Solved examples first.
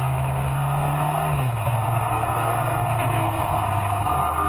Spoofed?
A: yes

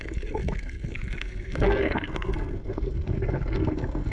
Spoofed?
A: yes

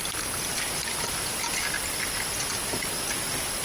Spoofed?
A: no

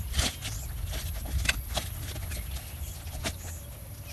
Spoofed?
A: no